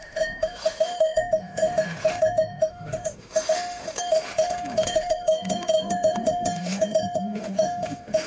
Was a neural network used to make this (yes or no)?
yes